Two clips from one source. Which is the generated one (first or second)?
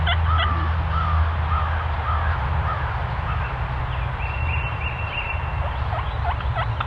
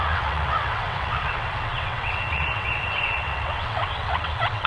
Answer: second